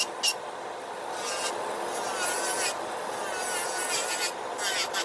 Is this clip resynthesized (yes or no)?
no